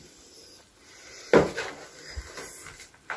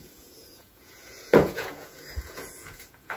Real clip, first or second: first